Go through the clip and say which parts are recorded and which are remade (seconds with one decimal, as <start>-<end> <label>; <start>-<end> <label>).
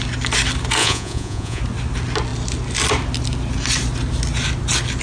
0.0-0.8 recorded; 0.8-1.6 remade; 1.6-5.0 recorded